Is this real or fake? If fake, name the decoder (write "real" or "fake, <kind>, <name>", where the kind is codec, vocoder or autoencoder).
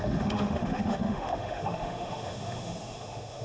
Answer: fake, autoencoder, DAC-VAE